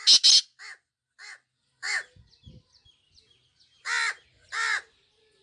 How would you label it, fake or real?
real